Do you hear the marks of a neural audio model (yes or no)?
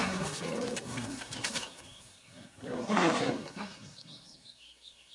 yes